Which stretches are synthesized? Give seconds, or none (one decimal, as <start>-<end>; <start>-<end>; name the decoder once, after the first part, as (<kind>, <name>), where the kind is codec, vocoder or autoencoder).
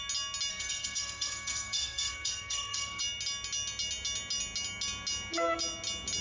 0.5-3.0 (codec, SNAC)